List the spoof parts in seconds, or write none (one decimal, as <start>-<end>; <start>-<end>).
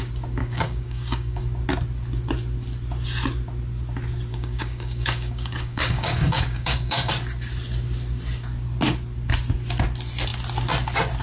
0.4-1.4; 4.3-7.1